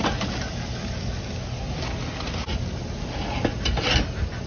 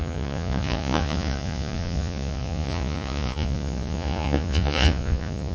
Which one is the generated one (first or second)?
second